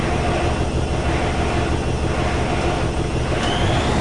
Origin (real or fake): real